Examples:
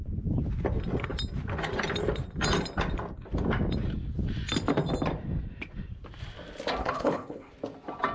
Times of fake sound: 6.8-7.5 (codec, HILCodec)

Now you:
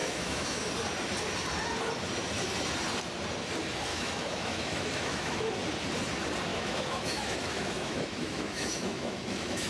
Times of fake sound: 0.0-0.7 (autoencoder, DAC-VAE); 3.9-5.5; 6.5-9.7

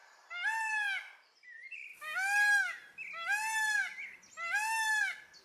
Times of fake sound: 1.4-1.9 (vocoder, BigVGAN v2)

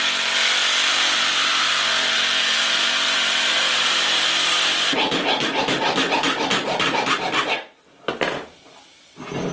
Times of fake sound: 0.9-1.9 (vocoder, BigVGAN v2); 2.4-5.6

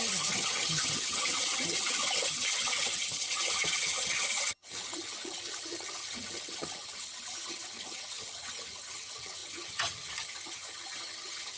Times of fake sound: 0.0-11.6 (vocoder, HiFi-GAN)